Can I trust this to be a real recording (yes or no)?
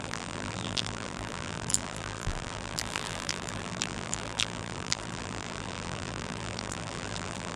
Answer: no